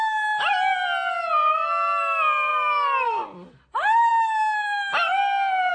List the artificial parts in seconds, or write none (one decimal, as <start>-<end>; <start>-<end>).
none